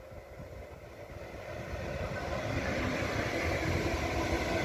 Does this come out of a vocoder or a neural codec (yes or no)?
no